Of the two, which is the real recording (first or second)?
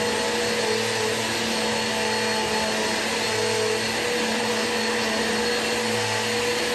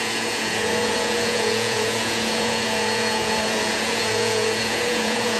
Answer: first